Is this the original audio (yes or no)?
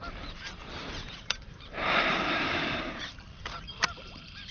no